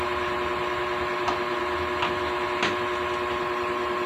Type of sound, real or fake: real